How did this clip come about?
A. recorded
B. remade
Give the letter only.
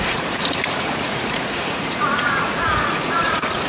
B